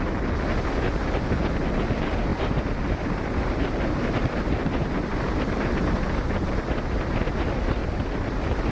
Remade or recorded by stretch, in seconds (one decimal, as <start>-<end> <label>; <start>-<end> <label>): 0.0-2.3 recorded; 2.3-7.2 remade; 7.2-7.8 recorded; 7.8-8.7 remade

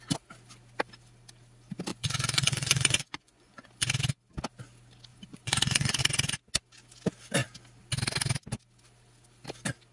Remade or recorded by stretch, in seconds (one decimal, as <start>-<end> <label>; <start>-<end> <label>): 0.0-1.9 recorded; 1.9-3.9 remade; 3.9-5.1 recorded; 5.1-6.0 remade; 6.0-9.9 recorded

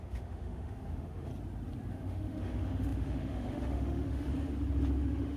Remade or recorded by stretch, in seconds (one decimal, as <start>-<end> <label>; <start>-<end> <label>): 0.0-1.3 remade; 1.3-1.9 recorded; 1.9-4.3 remade; 4.3-5.0 recorded; 5.0-5.4 remade

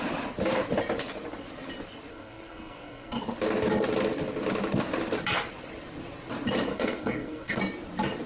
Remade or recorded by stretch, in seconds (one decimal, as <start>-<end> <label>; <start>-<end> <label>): 0.0-2.1 recorded; 2.1-3.2 remade; 3.2-6.7 recorded; 6.7-7.6 remade; 7.6-8.3 recorded

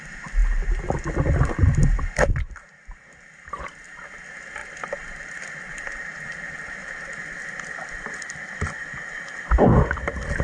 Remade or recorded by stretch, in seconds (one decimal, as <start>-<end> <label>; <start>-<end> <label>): 0.0-4.6 recorded; 4.6-5.7 remade; 5.7-6.8 recorded; 6.8-8.8 remade; 8.8-10.4 recorded

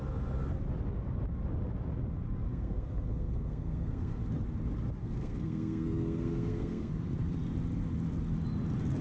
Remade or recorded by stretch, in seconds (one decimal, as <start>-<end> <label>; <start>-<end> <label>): 0.0-2.5 recorded; 2.5-4.2 remade; 4.2-5.0 recorded; 5.0-6.9 remade; 6.9-9.0 recorded

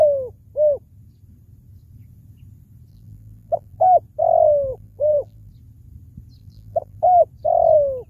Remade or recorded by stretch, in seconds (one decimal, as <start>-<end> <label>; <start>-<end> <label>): 0.0-2.9 recorded; 2.9-3.8 remade; 3.8-4.7 recorded; 4.7-5.5 remade; 5.5-6.4 recorded; 6.4-7.0 remade; 7.0-8.1 recorded